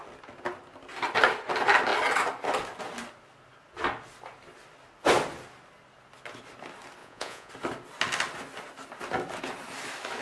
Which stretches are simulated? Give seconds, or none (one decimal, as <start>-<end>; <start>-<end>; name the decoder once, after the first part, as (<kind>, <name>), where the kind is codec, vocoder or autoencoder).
7.0-7.5 (vocoder, Vocos)